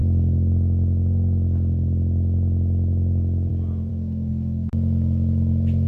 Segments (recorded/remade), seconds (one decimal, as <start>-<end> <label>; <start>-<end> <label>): 0.0-3.9 recorded; 3.9-4.7 remade; 4.7-5.9 recorded